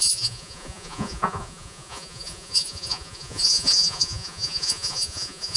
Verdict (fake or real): fake